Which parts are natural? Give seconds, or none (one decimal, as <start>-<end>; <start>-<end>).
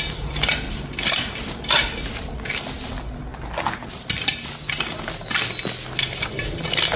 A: 0.0-7.0